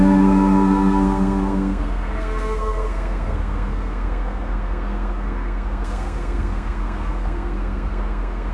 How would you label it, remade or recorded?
remade